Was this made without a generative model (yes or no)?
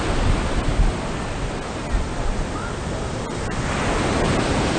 yes